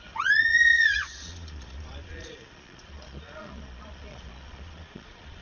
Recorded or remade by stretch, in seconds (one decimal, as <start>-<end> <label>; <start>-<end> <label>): 0.0-5.4 remade